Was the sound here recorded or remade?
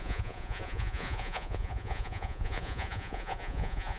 remade